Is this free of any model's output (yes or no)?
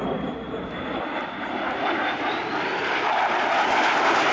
yes